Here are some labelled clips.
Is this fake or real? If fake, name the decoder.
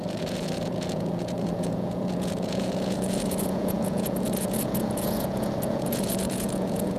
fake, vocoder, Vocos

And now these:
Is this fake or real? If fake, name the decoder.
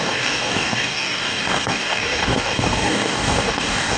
fake, codec, DAC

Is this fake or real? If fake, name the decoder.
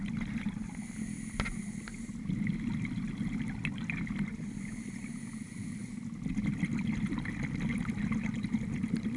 real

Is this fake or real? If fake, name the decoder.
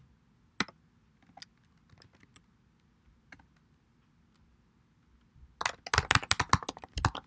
real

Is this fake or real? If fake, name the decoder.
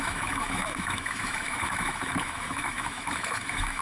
fake, autoencoder, DAC-VAE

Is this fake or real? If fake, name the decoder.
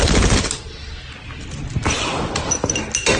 real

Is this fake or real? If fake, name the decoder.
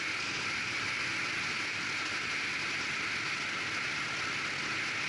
real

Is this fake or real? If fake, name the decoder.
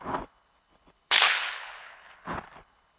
fake, codec, HILCodec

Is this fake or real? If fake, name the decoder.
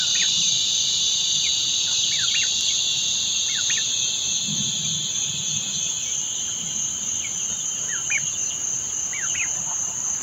real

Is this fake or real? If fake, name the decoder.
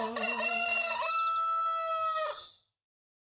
real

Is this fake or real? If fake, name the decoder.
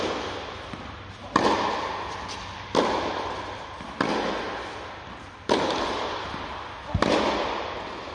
real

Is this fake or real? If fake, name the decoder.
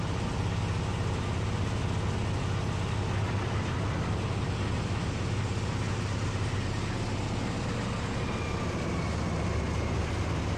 real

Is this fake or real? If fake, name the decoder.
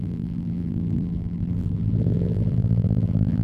fake, vocoder, BigVGAN v2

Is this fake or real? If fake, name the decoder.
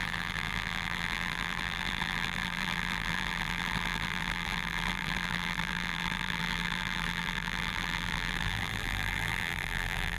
fake, vocoder, BigVGAN v2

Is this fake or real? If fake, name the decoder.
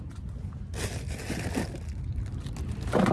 real